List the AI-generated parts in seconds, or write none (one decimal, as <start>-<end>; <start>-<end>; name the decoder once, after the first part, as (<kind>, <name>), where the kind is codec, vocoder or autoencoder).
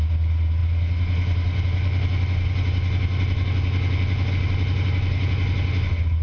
none